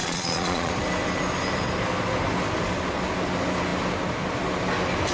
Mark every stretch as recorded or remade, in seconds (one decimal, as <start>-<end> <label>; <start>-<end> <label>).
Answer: 0.0-0.7 remade; 0.7-5.1 recorded